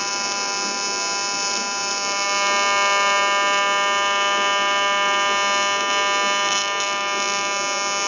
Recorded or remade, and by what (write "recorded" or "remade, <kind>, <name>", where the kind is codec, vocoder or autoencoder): recorded